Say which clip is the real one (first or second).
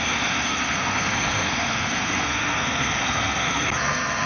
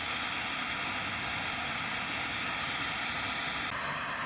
second